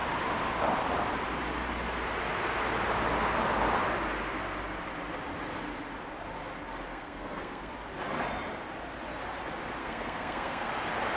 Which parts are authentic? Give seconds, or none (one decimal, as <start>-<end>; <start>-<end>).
0.0-6.9; 7.7-9.8; 10.7-11.2